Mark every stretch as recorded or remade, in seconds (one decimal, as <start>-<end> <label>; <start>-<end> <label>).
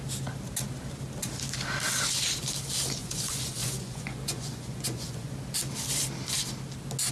0.0-3.0 recorded; 3.0-5.3 remade; 5.3-7.1 recorded